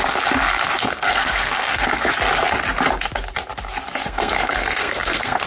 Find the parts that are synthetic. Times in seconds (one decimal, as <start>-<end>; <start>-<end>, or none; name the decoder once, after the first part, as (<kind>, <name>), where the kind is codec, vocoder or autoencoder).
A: 0.8-2.1 (codec, SNAC); 4.0-5.5